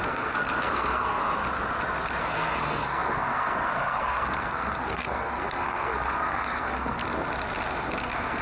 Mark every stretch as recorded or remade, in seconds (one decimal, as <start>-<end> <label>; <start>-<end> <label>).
0.0-1.2 remade; 1.2-2.2 recorded; 2.2-7.0 remade; 7.0-8.0 recorded; 8.0-8.4 remade